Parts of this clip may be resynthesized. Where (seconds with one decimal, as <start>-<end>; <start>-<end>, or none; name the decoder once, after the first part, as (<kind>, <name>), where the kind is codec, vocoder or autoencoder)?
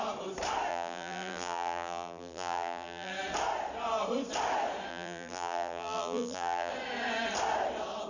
0.7-3.1 (vocoder, BigVGAN v2); 4.9-6.7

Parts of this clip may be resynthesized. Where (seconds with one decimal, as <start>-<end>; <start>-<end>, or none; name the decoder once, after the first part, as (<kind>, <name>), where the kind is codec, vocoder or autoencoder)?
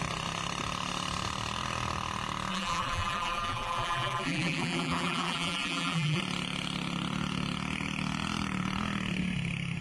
2.5-6.2 (vocoder, BigVGAN v2)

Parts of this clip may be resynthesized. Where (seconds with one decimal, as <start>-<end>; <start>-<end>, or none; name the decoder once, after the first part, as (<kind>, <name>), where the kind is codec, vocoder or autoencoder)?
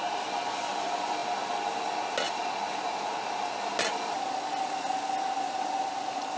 none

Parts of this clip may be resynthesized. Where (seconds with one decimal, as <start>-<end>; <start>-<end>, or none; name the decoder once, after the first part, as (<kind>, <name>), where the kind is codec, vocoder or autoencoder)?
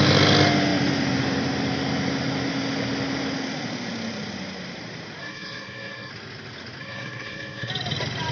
5.2-6.1 (codec, SNAC); 6.8-7.7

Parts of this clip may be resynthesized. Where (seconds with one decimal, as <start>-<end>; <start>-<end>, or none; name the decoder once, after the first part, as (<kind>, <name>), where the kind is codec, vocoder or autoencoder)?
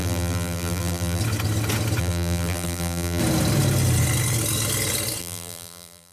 0.0-1.2 (vocoder, BigVGAN v2); 2.0-3.2; 5.2-6.1